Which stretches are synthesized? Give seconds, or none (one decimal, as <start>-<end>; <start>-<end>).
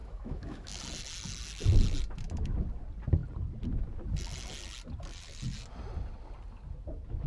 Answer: 0.0-0.8